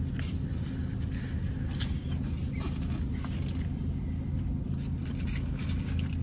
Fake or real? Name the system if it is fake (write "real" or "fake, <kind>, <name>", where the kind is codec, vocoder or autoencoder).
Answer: real